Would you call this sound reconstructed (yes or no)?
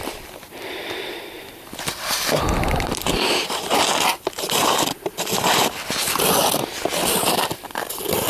yes